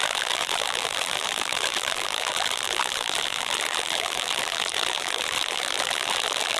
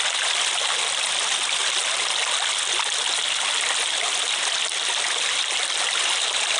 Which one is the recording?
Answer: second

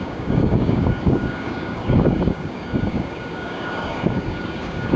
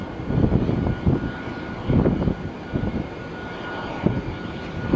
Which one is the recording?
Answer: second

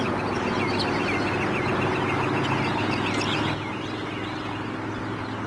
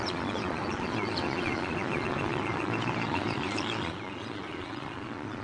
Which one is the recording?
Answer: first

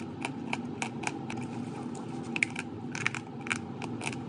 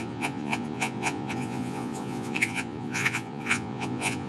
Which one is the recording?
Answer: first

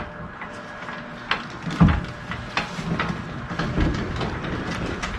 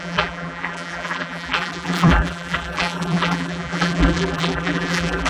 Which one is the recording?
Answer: first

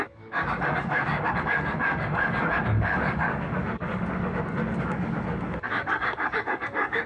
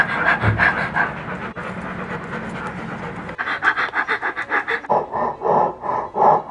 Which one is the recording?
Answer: second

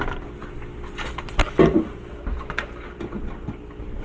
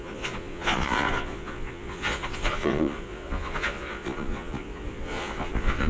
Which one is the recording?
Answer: first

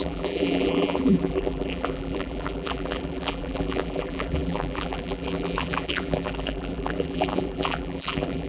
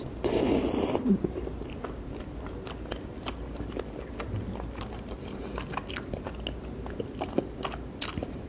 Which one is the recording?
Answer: second